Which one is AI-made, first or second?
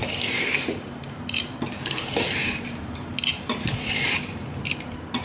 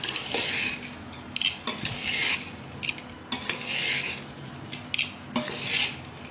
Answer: first